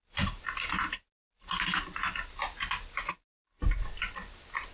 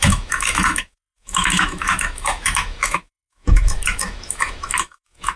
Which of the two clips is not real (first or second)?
second